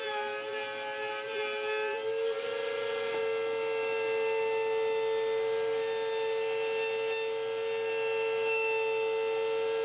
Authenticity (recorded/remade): recorded